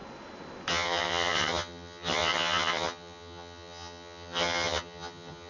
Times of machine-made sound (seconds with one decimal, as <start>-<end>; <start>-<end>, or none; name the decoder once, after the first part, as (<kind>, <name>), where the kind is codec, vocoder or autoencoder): 0.7-5.5 (vocoder, HiFi-GAN)